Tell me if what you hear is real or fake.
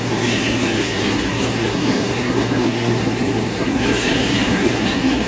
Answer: fake